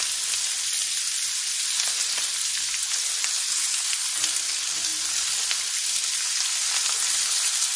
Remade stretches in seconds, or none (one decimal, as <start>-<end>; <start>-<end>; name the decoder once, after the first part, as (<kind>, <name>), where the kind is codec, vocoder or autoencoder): none